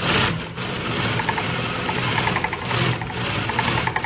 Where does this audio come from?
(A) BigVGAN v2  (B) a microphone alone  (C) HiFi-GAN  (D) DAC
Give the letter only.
B